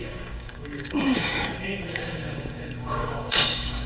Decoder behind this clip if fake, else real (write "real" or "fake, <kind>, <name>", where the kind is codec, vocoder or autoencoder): fake, codec, DAC